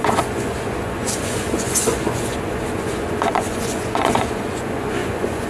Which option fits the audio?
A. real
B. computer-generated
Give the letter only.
B